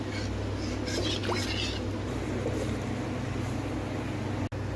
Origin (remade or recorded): recorded